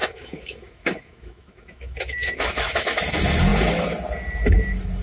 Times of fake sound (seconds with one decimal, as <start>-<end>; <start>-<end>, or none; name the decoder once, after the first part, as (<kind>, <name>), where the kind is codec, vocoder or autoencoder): 0.0-3.0 (autoencoder, DAC-VAE)